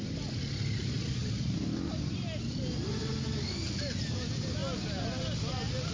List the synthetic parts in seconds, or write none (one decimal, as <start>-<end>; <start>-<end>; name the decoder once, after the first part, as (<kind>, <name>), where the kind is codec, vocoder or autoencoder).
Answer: none